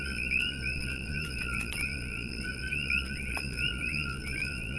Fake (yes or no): yes